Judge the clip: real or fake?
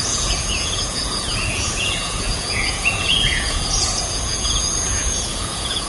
fake